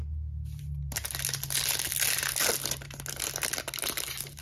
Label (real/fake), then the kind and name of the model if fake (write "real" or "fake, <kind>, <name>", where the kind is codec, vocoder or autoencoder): real